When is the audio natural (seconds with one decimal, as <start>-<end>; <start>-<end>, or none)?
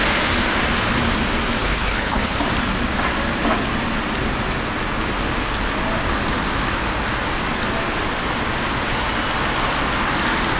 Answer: 0.0-1.6; 2.4-10.6